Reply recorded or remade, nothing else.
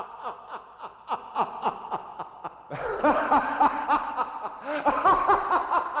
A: recorded